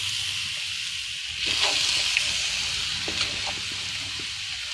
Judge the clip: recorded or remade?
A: recorded